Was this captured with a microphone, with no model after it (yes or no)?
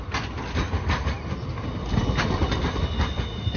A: yes